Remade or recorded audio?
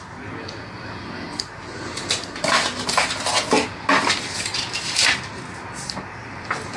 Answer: recorded